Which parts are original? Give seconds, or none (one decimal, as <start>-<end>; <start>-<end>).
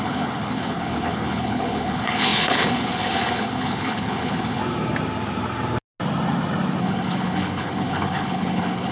4.6-6.8